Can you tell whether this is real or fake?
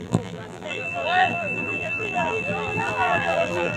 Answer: fake